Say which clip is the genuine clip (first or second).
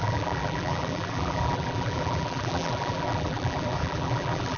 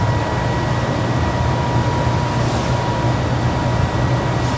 second